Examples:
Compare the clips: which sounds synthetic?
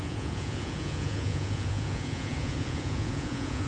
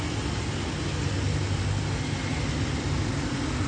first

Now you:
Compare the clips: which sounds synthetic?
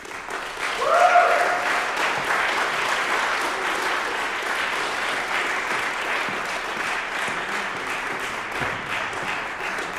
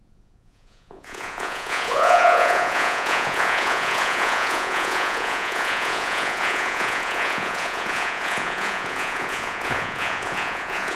second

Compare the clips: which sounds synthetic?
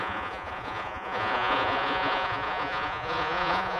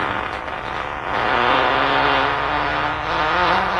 first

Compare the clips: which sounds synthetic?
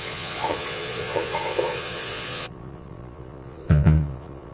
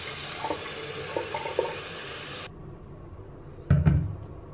first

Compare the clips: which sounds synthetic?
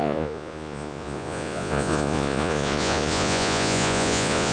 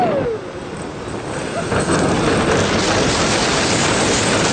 first